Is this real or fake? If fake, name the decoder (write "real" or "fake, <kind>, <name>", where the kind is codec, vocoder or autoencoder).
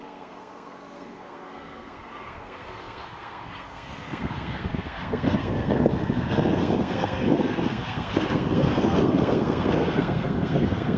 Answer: fake, codec, SNAC